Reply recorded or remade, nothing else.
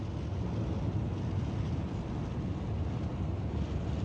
recorded